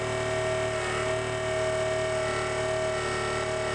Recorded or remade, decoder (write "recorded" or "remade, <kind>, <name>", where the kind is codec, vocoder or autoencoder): recorded